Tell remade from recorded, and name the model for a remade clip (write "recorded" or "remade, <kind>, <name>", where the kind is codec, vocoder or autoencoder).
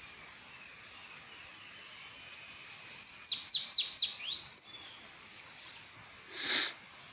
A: recorded